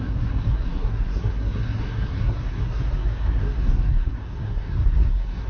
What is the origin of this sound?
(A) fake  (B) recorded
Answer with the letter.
A